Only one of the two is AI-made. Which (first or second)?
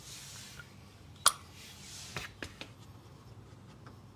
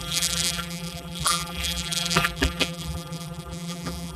second